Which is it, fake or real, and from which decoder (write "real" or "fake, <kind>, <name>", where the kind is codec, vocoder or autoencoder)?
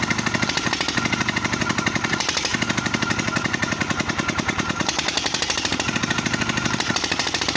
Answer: fake, vocoder, BigVGAN v2